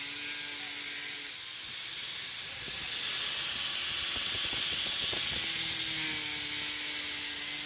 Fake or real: real